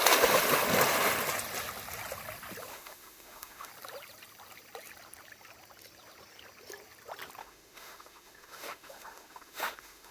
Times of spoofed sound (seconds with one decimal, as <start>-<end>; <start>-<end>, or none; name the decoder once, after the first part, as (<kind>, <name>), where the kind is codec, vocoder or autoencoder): 2.7-3.7 (autoencoder, DAC-VAE); 7.4-10.1